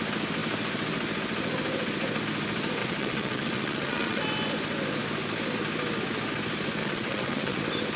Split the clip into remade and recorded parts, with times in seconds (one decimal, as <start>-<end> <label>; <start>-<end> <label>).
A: 0.0-2.8 recorded; 2.8-4.2 remade; 4.2-6.8 recorded; 6.8-7.6 remade; 7.6-8.0 recorded